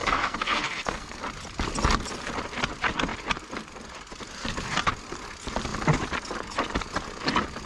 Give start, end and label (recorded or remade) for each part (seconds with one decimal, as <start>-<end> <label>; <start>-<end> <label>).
0.0-1.2 remade; 1.2-7.7 recorded